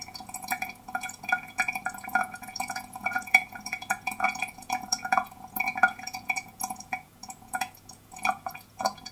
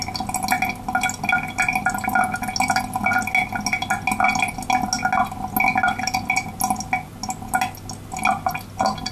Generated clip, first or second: first